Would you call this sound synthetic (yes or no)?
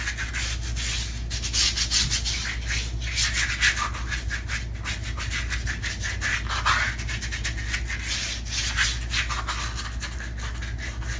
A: no